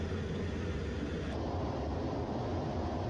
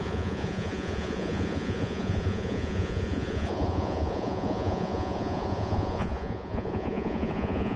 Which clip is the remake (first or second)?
second